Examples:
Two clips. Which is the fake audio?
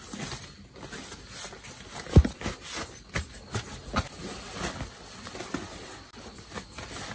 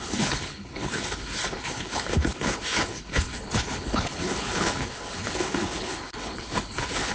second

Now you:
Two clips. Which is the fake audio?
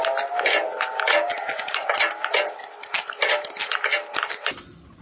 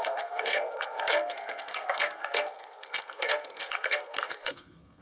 second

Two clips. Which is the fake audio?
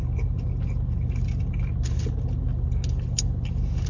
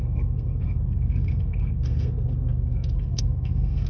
second